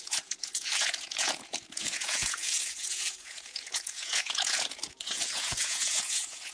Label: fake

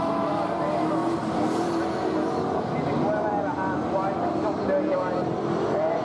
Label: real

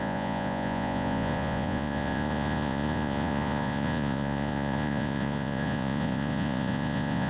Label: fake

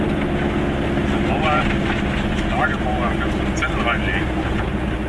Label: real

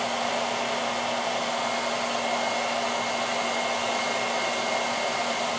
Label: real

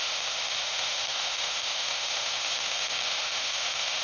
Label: fake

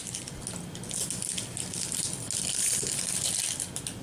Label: real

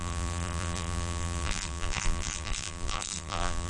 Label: fake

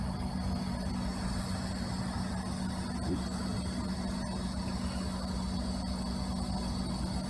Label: real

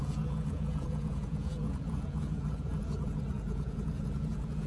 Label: fake